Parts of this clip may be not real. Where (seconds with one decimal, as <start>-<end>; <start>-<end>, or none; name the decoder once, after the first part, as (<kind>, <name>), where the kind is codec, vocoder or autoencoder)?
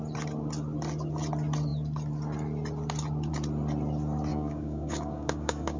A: 4.3-5.8 (codec, DAC)